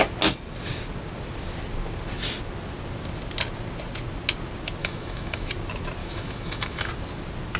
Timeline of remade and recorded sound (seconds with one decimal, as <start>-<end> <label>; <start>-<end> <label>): 0.0-4.8 recorded; 4.8-5.5 remade; 5.5-6.0 recorded; 6.0-6.9 remade; 6.9-7.6 recorded